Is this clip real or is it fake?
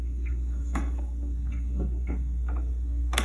fake